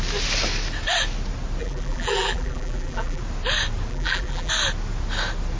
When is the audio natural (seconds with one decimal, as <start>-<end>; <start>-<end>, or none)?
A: 0.0-1.6; 3.2-3.9; 4.5-5.6